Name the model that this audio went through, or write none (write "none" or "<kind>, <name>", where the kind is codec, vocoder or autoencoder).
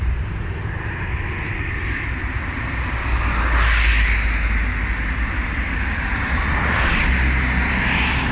none